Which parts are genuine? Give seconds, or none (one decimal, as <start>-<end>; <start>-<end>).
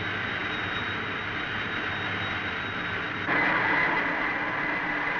0.0-5.2